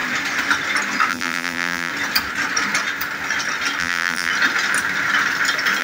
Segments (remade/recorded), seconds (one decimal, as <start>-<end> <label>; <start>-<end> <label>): 0.0-1.1 recorded; 1.1-1.9 remade; 1.9-3.8 recorded; 3.8-4.3 remade; 4.3-5.8 recorded